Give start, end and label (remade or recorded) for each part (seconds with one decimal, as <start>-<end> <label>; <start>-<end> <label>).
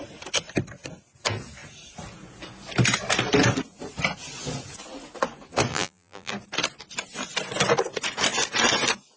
0.0-5.7 recorded; 5.7-6.3 remade; 6.3-9.2 recorded